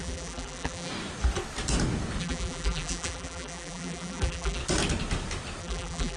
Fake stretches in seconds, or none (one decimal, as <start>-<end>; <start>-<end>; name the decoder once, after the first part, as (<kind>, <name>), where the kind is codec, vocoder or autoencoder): 0.0-0.9 (vocoder, BigVGAN v2); 2.2-4.6; 5.6-6.2